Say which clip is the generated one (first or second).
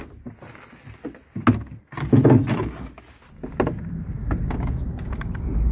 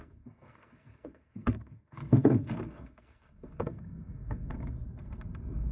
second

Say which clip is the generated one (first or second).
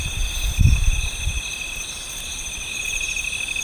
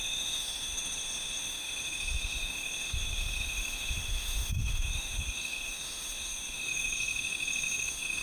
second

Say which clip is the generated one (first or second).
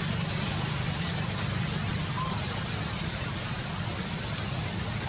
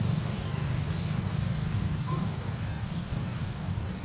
second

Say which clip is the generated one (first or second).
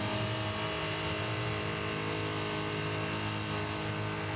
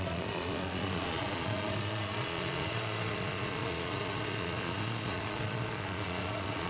second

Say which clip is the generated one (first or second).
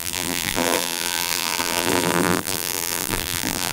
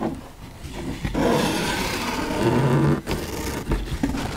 first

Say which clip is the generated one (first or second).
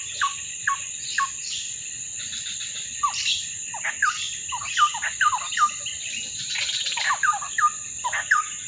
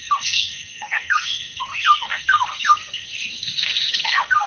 second